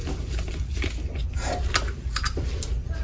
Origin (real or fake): real